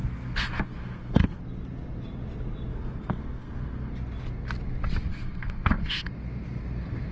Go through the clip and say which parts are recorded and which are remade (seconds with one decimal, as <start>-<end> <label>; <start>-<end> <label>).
0.0-1.4 remade; 1.4-2.7 recorded; 2.7-3.9 remade; 3.9-5.1 recorded; 5.1-6.1 remade; 6.1-7.1 recorded